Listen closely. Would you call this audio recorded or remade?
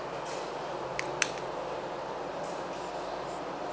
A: recorded